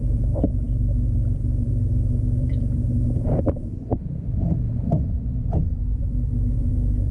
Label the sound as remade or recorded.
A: remade